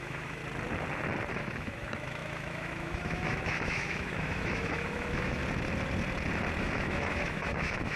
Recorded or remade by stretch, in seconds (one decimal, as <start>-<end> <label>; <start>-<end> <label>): 0.0-0.4 remade; 0.4-1.3 recorded; 1.3-5.4 remade; 5.4-6.6 recorded; 6.6-8.0 remade